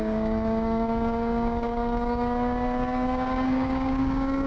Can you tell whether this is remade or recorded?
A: remade